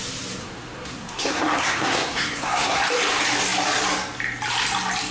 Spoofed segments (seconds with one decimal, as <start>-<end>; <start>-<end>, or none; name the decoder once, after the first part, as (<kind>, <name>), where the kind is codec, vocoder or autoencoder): 0.4-2.8 (codec, SNAC)